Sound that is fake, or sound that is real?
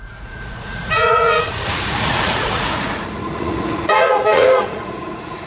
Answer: fake